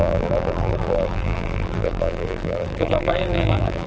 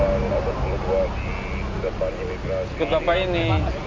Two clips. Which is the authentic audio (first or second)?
second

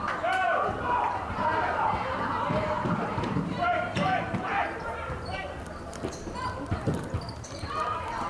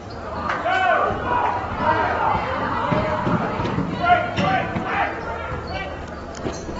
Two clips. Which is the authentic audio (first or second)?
second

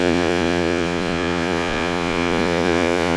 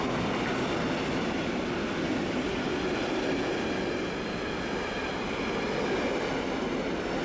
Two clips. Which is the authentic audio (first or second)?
second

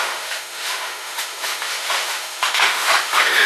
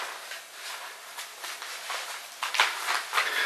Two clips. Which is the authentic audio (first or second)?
second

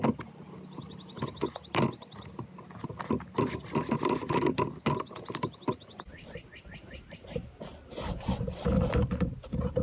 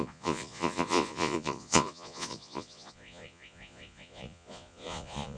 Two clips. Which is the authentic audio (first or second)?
first